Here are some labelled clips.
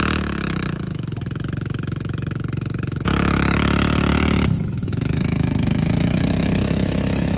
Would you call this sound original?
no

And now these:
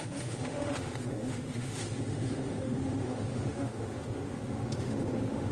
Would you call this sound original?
no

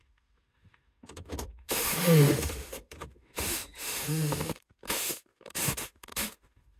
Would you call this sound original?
no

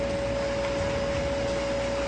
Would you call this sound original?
yes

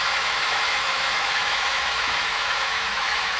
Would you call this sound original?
no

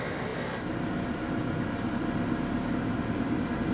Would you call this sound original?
yes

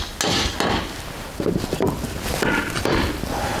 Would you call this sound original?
yes